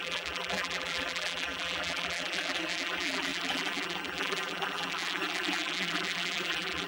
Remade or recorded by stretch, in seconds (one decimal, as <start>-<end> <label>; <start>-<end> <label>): 0.0-6.9 remade